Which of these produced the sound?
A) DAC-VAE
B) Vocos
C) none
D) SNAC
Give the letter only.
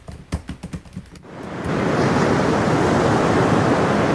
C